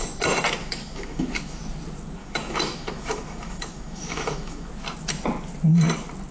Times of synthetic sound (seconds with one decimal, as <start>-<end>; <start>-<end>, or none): 0.6-1.6; 2.2-4.7

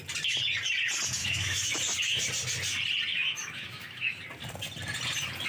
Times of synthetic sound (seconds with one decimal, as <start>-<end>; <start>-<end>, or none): 1.2-1.7; 3.1-4.2

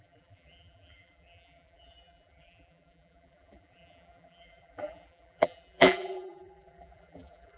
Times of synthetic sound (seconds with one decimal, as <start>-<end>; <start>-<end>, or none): 0.0-7.6

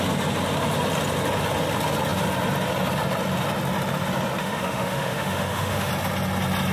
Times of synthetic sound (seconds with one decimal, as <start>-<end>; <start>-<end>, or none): 4.4-5.9

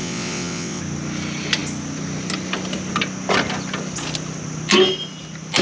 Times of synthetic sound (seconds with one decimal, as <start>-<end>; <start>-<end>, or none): 0.0-0.8

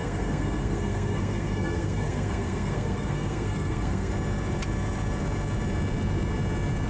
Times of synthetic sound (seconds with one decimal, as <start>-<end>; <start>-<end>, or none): 0.0-4.1

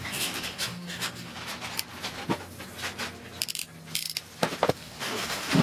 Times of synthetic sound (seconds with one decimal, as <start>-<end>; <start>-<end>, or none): 0.0-1.3; 4.7-5.6

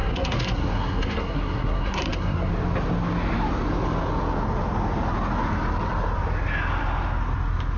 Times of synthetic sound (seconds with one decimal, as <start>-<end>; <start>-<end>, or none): 0.0-2.5